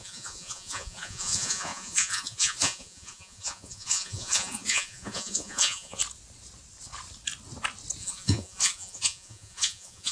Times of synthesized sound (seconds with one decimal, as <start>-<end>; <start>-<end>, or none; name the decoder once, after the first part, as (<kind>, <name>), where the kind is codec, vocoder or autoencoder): 0.0-6.0 (vocoder, Vocos); 8.0-10.1